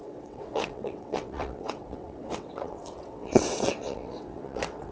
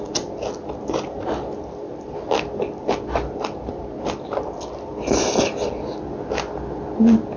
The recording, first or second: second